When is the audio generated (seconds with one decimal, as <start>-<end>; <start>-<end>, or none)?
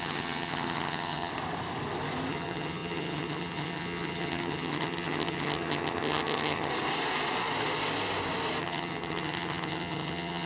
0.0-1.3; 2.3-6.7; 8.6-10.5